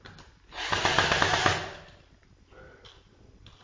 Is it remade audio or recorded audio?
recorded